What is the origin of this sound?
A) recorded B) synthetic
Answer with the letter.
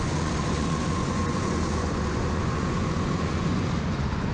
B